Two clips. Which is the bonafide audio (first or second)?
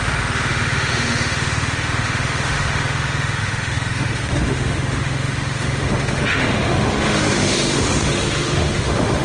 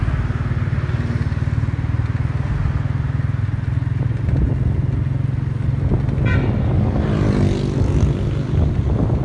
second